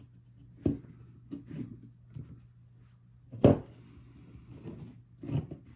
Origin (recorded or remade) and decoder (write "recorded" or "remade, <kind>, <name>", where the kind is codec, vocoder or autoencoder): recorded